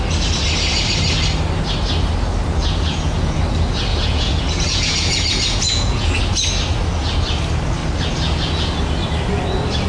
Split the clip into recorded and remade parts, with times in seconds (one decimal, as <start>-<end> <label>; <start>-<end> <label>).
0.0-2.6 recorded; 2.6-3.4 remade; 3.4-3.9 recorded; 3.9-6.2 remade; 6.2-9.9 recorded